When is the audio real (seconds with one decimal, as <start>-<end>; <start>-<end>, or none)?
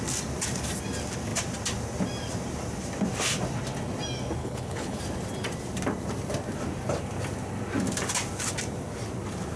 0.0-4.4; 5.0-9.6